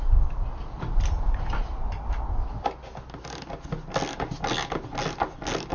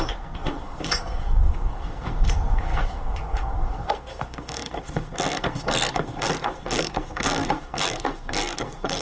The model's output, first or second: second